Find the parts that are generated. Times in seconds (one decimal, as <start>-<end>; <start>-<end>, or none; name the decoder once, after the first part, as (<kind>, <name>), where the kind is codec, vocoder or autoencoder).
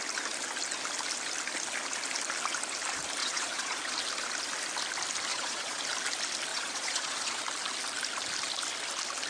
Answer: 3.2-3.9 (vocoder, Vocos); 5.3-5.8; 6.5-7.4